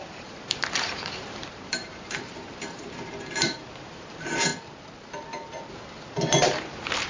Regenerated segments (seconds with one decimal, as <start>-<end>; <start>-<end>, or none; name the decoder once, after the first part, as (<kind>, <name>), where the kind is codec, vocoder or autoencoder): 0.0-4.5 (vocoder, BigVGAN v2); 5.7-7.1